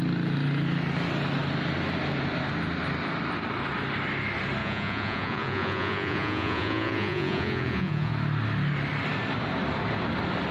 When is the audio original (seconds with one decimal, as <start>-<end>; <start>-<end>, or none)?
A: 0.0-4.6; 8.1-10.5